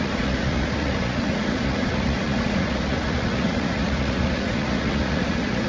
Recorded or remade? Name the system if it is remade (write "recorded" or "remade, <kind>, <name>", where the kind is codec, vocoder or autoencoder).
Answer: remade, vocoder, Vocos